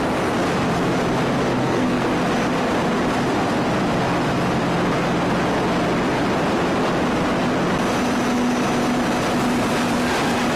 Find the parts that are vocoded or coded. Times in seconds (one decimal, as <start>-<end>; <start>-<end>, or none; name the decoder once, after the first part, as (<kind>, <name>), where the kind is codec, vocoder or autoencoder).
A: 1.6-2.1 (codec, SNAC)